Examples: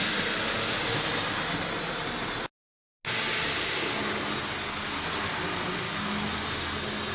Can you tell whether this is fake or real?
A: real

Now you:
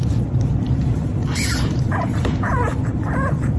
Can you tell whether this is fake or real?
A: fake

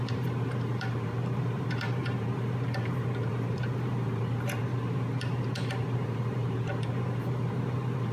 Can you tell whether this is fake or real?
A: fake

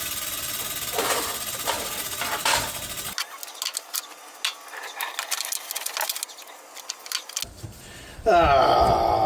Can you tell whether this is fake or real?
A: real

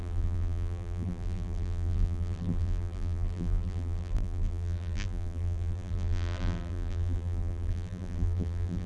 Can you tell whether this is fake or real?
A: fake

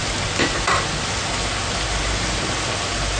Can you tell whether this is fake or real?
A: real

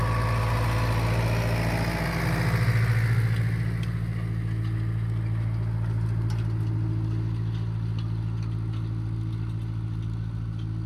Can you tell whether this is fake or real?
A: real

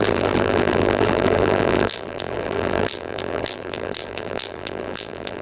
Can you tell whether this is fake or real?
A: fake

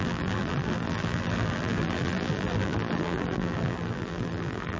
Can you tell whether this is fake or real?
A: fake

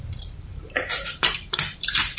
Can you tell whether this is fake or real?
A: fake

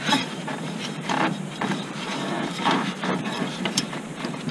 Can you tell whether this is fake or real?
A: fake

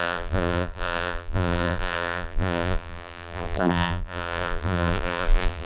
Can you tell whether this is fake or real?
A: fake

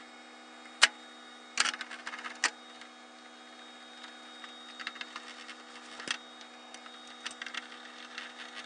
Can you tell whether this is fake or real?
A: real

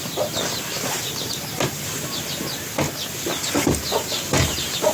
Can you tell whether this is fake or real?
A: fake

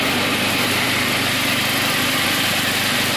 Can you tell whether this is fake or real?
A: real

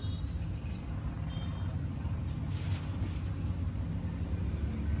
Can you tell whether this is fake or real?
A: real